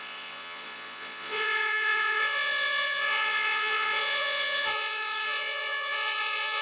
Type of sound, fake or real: fake